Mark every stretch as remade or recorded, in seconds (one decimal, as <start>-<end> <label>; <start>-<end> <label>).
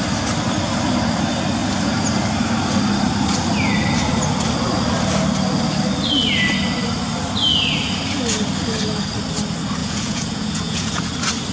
0.0-9.8 recorded; 9.8-11.0 remade; 11.0-11.5 recorded